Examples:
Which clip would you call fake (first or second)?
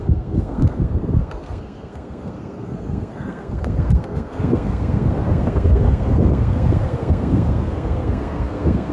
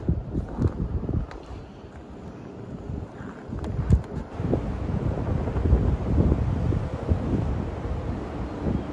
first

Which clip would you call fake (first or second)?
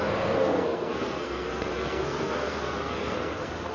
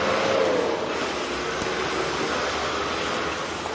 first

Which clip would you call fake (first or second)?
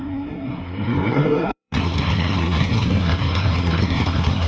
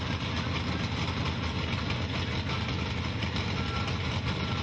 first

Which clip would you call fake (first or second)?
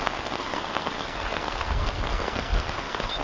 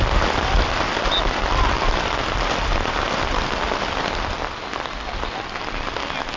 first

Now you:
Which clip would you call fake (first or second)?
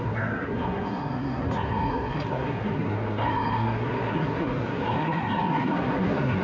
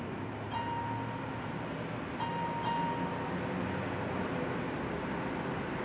first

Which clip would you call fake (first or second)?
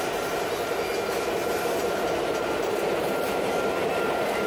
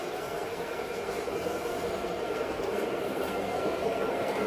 second